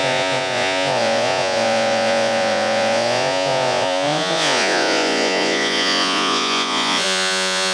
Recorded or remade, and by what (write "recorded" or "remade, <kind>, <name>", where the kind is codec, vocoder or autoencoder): remade, vocoder, Vocos